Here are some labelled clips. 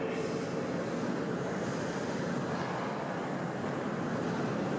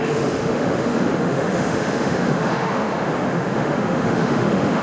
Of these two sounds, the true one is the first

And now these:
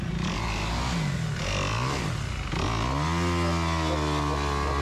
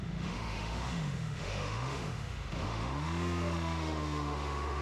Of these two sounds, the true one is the first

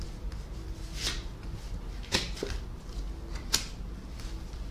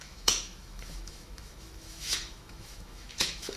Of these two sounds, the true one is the first